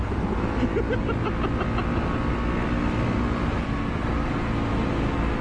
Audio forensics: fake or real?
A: real